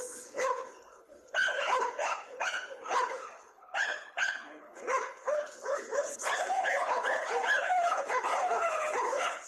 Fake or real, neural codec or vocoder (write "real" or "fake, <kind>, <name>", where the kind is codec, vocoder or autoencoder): fake, codec, HILCodec